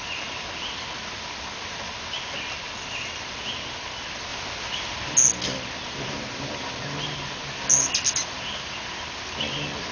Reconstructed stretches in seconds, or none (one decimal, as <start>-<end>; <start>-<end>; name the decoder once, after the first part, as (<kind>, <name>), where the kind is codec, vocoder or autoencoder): none